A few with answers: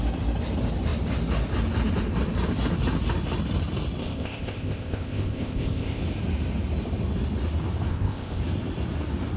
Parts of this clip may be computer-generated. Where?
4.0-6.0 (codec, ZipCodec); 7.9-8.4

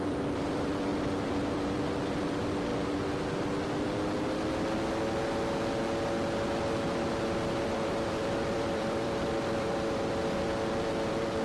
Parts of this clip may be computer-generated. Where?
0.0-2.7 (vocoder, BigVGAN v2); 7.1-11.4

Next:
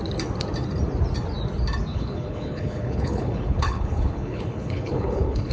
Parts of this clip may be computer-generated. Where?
1.9-5.5 (codec, HILCodec)